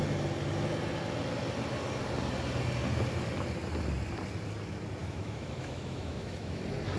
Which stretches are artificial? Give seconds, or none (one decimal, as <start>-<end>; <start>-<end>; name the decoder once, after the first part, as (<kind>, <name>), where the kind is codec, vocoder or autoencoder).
5.0-6.6 (autoencoder, DAC-VAE)